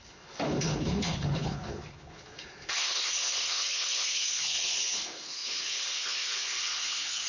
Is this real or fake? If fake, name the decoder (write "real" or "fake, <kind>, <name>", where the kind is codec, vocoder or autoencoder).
fake, codec, HILCodec